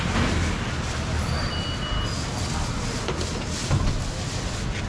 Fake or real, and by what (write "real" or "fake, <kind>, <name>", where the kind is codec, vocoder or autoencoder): real